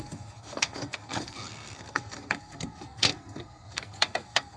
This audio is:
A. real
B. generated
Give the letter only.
B